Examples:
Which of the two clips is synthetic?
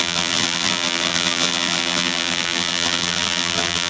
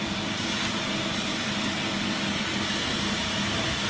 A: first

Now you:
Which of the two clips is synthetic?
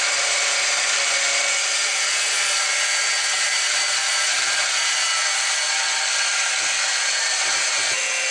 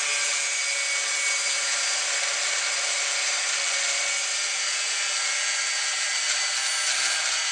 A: first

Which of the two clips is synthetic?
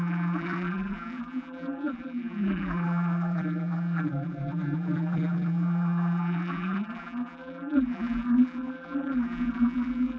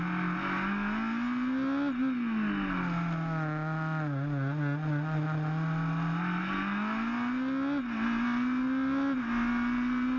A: first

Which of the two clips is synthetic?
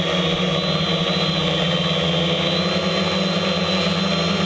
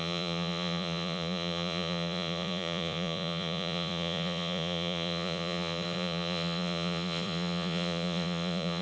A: second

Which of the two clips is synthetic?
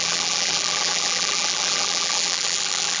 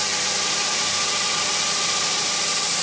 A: first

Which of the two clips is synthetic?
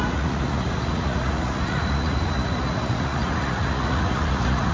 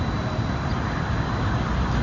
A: first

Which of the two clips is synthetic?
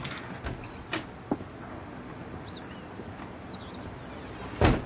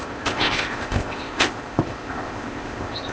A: second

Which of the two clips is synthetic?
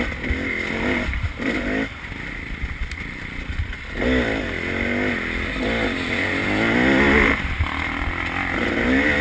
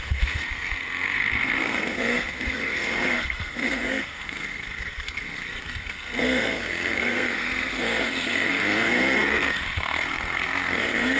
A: second